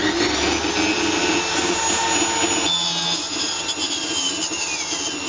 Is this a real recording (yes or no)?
yes